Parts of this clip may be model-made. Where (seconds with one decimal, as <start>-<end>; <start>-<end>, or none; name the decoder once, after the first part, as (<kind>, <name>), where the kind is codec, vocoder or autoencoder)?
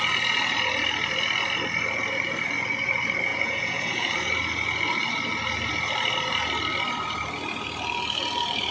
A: 3.3-4.1 (vocoder, Vocos)